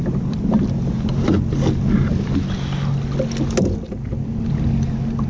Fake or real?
real